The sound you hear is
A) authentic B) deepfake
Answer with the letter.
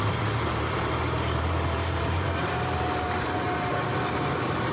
B